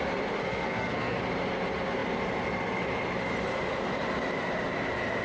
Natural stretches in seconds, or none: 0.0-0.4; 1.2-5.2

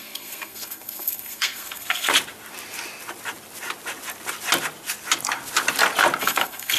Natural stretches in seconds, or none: 2.1-6.2

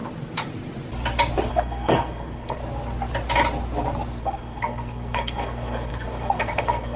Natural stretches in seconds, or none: 0.0-1.5; 2.6-4.2

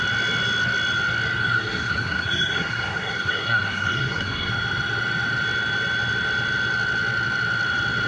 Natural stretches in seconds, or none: 0.0-1.4; 4.5-8.1